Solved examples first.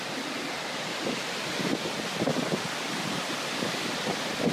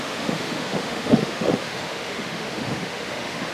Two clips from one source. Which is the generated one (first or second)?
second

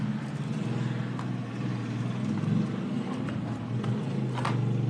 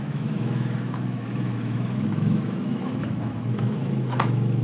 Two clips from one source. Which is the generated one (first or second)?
second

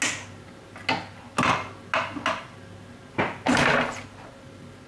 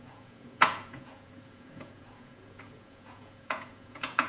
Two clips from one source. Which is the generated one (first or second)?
second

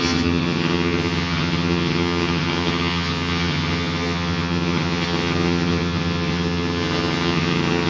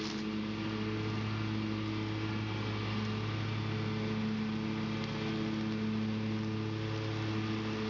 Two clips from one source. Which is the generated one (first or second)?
first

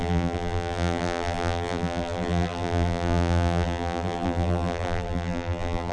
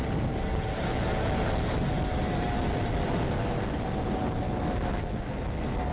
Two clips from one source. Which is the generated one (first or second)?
first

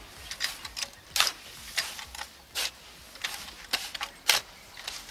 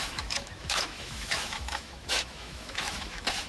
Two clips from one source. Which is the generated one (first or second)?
second